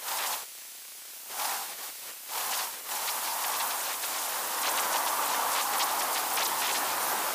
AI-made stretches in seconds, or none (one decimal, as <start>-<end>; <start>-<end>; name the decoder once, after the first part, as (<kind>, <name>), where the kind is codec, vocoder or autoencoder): 0.4-1.1 (autoencoder, DAC-VAE); 1.6-2.1